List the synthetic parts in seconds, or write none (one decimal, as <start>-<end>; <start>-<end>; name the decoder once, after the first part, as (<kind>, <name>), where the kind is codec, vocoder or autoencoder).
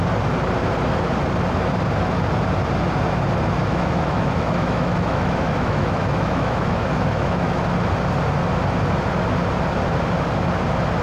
3.6-7.6 (autoencoder, DAC-VAE)